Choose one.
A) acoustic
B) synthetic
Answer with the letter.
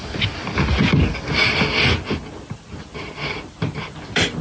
A